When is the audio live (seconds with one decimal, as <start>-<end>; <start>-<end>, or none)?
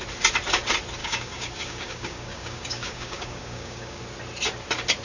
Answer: 0.0-1.0; 4.0-5.0